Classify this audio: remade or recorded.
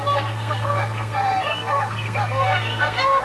remade